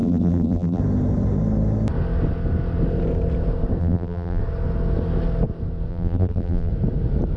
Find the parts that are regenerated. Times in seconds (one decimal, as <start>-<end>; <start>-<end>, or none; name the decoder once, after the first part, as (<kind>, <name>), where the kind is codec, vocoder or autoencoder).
0.0-0.8 (vocoder, BigVGAN v2); 3.8-4.4; 5.9-6.7